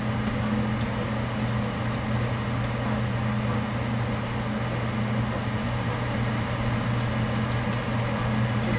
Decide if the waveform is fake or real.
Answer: real